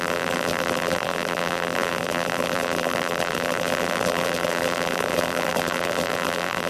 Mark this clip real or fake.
fake